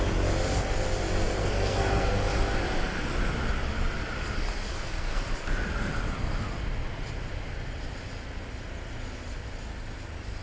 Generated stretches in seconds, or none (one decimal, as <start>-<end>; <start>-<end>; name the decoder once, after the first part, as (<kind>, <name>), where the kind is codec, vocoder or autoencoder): 1.4-2.2 (codec, SNAC); 4.7-5.2